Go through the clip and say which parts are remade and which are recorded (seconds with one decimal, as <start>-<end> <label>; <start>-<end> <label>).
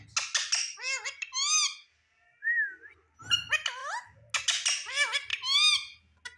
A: 0.0-6.4 recorded